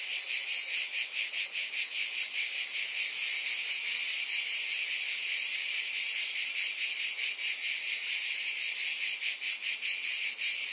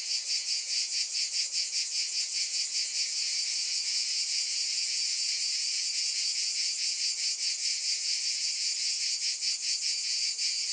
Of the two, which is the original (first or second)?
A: first